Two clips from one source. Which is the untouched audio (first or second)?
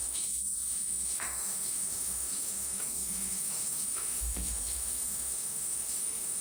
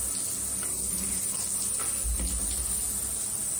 second